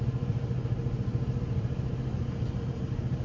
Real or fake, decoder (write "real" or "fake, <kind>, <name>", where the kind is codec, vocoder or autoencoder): real